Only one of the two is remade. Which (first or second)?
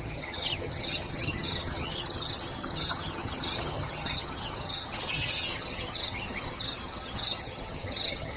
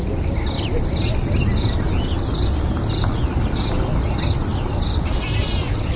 first